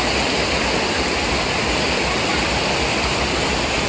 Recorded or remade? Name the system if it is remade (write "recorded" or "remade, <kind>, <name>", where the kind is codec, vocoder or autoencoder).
recorded